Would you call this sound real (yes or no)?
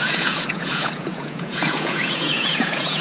no